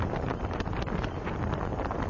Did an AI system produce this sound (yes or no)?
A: yes